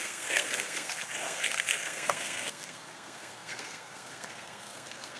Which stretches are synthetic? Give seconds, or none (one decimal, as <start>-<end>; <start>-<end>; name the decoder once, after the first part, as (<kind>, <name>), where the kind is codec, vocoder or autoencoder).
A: 0.0-5.2 (codec, SNAC)